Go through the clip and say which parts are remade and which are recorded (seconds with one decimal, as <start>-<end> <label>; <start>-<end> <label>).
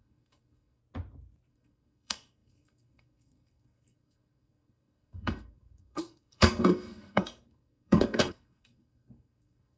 0.0-0.8 remade; 0.8-1.5 recorded; 1.5-9.8 remade